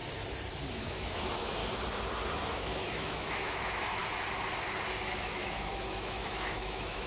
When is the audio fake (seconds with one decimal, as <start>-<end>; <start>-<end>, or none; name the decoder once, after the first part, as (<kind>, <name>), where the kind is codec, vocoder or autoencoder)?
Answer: 0.7-1.6 (autoencoder, DAC-VAE); 2.5-4.0; 5.1-7.1

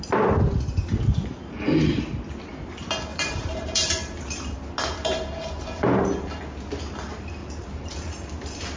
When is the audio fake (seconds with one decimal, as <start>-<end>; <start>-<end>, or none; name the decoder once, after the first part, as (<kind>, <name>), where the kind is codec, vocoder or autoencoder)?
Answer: 3.1-4.3 (vocoder, BigVGAN v2); 7.4-8.1

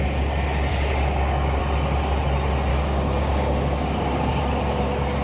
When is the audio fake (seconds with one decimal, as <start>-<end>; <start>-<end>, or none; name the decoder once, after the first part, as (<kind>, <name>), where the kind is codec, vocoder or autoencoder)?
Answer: 0.7-1.6 (codec, DAC); 2.7-4.4

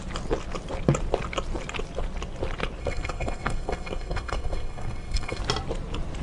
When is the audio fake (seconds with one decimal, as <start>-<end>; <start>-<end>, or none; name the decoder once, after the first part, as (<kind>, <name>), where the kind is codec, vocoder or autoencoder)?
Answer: 2.8-5.4 (codec, SNAC)